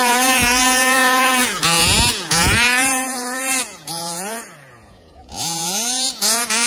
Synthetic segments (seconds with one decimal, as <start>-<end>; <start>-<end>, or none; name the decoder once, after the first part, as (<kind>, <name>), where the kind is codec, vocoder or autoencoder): 0.0-6.7 (vocoder, Vocos)